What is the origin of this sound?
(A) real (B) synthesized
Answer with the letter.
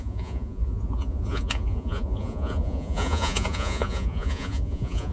B